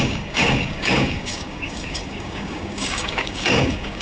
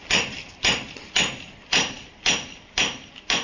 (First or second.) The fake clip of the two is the first